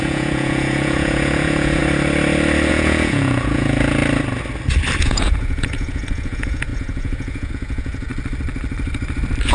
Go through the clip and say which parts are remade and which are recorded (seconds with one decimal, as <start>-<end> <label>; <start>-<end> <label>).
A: 0.0-1.8 remade; 1.8-2.7 recorded; 2.7-4.0 remade; 4.0-5.0 recorded; 5.0-8.1 remade; 8.1-9.5 recorded